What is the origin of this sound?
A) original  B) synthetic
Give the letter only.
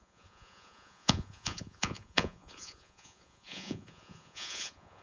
B